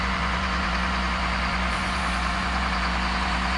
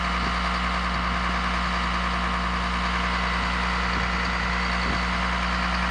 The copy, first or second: first